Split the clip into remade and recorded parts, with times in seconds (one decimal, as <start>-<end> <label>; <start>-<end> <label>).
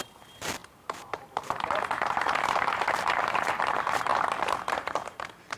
0.0-4.1 remade; 4.1-4.7 recorded; 4.7-5.6 remade